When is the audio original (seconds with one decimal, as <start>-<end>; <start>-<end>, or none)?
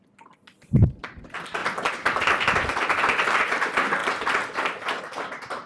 0.0-5.7